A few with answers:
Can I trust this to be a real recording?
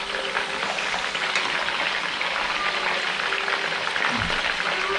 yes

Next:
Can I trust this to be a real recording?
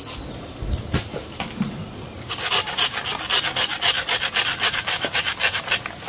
yes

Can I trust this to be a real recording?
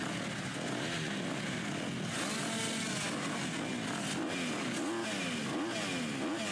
yes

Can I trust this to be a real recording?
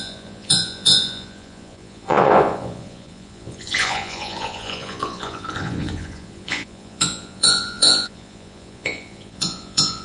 no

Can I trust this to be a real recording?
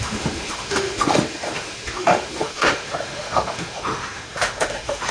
no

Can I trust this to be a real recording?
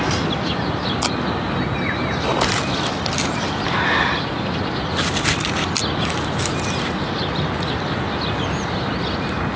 yes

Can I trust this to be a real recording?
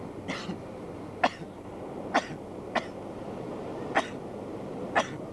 yes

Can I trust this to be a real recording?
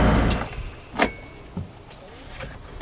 yes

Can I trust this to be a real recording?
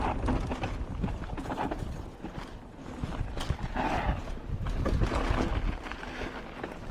yes